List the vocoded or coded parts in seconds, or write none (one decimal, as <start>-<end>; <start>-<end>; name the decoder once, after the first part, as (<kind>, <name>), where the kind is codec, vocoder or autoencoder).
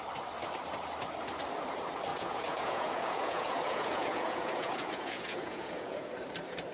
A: 2.1-6.1 (vocoder, Vocos)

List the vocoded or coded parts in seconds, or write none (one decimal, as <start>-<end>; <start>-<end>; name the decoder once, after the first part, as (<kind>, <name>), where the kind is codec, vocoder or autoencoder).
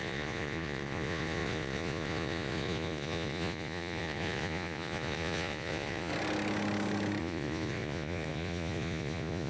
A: 0.0-6.1 (vocoder, Vocos); 7.2-9.5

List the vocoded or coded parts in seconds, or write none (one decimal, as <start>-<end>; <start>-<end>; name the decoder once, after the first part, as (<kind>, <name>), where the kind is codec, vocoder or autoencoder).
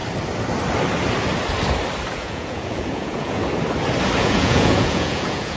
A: 2.1-3.4 (vocoder, Vocos); 4.2-5.6